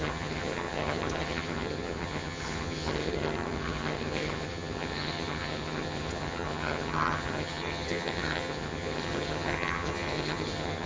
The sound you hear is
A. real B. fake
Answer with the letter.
B